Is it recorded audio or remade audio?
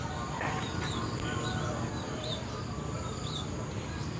recorded